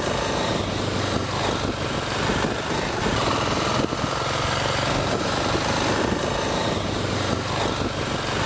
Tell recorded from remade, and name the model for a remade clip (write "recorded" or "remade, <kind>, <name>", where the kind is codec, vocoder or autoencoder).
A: recorded